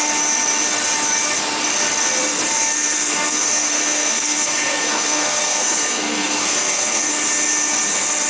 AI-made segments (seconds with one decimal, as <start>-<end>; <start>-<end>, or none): 2.7-7.1